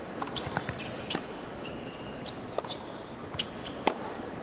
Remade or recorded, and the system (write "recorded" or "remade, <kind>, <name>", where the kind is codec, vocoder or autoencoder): recorded